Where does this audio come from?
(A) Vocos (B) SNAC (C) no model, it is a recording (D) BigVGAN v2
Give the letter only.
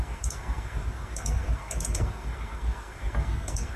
B